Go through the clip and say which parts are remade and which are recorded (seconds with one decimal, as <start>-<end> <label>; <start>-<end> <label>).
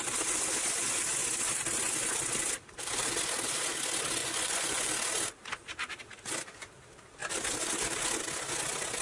0.0-4.2 recorded; 4.2-4.9 remade; 4.9-9.0 recorded